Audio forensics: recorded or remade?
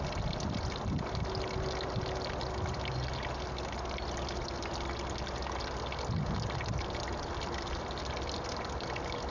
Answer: recorded